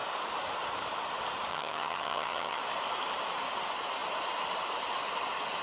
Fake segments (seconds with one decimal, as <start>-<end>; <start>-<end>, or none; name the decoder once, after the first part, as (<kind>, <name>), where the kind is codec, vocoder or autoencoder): 1.5-2.6 (vocoder, HiFi-GAN)

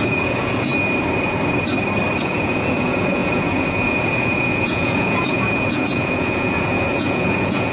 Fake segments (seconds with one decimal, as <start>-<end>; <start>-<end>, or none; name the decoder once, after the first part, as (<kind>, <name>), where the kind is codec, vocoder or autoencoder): 0.0-0.7 (vocoder, Vocos); 2.2-7.7

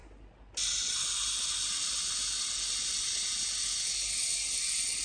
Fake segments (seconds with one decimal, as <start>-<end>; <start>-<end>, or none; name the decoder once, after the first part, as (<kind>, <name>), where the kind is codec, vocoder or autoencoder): none

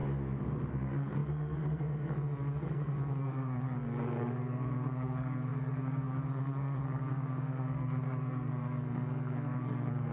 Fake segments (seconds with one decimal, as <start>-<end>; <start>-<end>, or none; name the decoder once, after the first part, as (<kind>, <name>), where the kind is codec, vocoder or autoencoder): 0.7-10.1 (codec, SNAC)

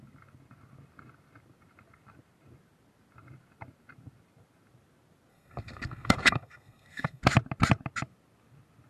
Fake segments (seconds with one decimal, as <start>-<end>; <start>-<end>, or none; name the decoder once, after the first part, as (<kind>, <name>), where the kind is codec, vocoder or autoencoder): 5.3-7.2 (codec, SNAC)

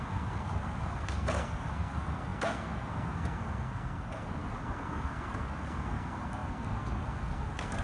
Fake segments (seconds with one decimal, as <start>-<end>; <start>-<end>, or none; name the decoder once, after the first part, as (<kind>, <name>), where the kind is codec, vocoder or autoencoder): 0.0-7.8 (codec, SNAC)

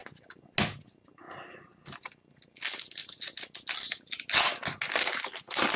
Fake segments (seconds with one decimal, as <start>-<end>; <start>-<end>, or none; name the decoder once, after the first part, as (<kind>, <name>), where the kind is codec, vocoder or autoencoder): none